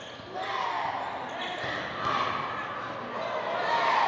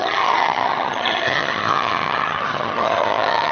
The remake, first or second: second